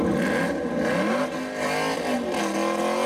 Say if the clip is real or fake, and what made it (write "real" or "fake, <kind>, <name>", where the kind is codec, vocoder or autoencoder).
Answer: real